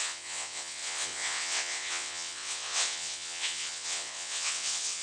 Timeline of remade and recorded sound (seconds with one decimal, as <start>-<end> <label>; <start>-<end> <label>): 0.0-5.0 remade